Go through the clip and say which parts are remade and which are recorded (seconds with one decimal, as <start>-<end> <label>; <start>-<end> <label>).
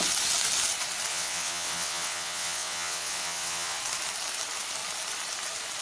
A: 0.0-1.1 recorded; 1.1-3.8 remade; 3.8-5.8 recorded